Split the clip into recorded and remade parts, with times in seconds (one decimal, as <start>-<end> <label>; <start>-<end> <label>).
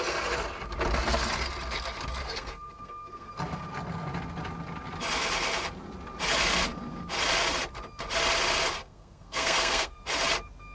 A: 0.0-2.2 recorded; 2.2-3.3 remade; 3.3-8.8 recorded; 8.8-10.0 remade; 10.0-10.7 recorded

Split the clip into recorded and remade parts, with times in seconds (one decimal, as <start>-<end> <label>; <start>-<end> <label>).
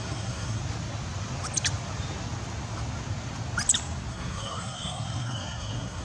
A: 0.0-0.6 remade; 0.6-4.1 recorded; 4.1-6.0 remade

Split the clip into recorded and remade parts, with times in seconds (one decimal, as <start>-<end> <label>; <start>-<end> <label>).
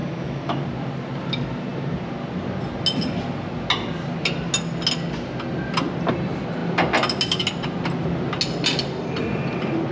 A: 0.0-0.6 remade; 0.6-9.9 recorded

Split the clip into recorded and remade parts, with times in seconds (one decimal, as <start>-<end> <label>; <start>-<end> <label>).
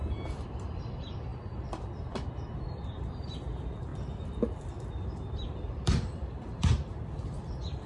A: 0.0-3.9 remade; 3.9-4.6 recorded; 4.6-7.9 remade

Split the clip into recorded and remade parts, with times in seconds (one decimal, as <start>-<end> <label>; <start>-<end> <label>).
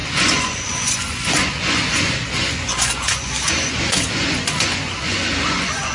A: 0.0-5.9 remade